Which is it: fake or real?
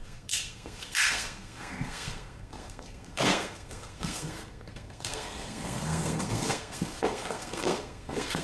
fake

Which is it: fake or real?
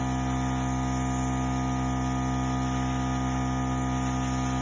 real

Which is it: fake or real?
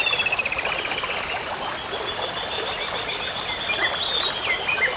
real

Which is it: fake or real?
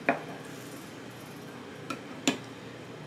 real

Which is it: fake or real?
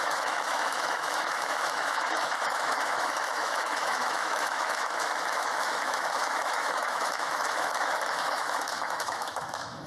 fake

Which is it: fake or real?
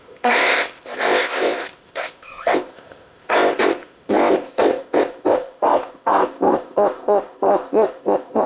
fake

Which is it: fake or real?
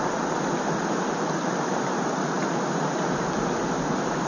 real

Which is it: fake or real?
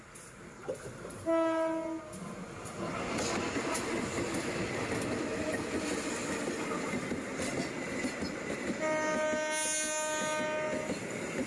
real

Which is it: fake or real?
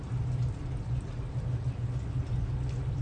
real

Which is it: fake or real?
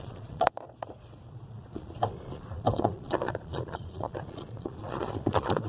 fake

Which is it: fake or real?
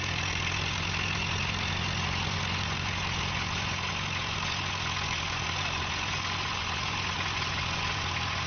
fake